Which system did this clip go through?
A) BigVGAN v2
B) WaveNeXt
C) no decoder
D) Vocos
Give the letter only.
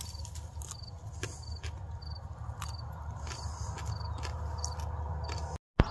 C